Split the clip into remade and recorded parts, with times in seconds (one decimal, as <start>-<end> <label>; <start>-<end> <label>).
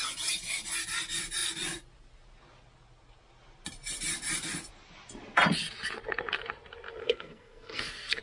0.0-7.0 recorded; 7.0-8.2 remade